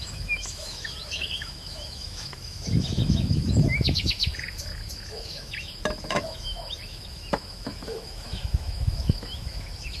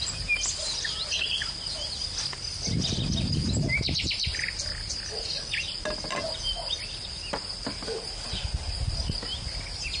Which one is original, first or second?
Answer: second